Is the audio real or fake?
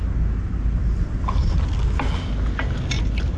real